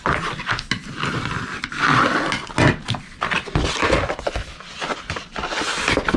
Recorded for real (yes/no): yes